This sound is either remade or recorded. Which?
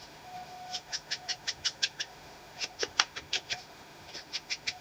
remade